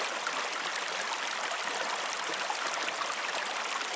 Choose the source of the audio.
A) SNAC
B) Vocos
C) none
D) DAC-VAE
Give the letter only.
C